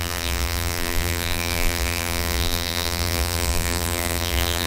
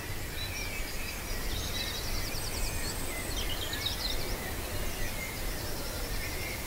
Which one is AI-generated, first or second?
first